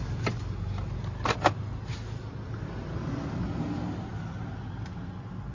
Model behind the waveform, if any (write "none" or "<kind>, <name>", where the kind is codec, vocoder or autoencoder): none